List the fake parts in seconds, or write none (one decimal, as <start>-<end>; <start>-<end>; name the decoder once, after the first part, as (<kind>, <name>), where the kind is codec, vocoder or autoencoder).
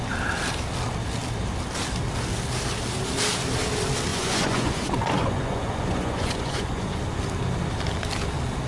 4.1-7.0 (vocoder, Vocos)